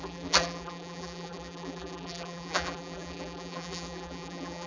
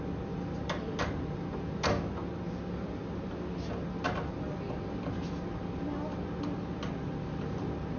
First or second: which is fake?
first